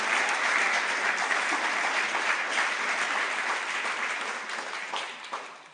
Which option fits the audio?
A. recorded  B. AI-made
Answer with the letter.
A